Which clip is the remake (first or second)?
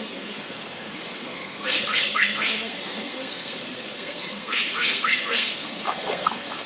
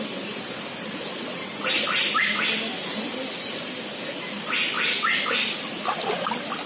first